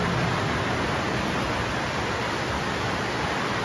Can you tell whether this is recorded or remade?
recorded